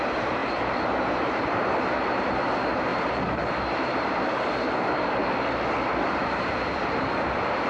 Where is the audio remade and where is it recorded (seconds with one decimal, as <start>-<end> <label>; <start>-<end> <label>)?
0.0-5.2 remade; 5.2-6.0 recorded; 6.0-7.7 remade